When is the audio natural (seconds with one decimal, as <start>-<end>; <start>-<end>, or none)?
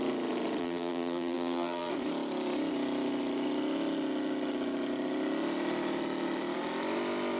0.0-0.6; 1.9-7.4